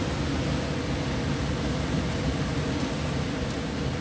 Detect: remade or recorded recorded